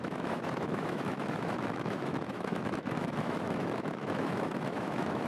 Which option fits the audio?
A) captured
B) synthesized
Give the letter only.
B